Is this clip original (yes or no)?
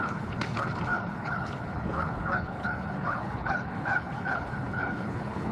no